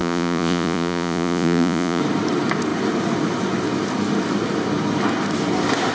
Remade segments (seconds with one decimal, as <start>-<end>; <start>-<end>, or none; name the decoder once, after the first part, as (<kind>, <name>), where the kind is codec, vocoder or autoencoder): 0.0-2.0 (vocoder, Vocos)